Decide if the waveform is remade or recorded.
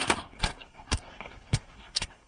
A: remade